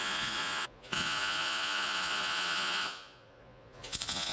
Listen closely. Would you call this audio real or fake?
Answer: fake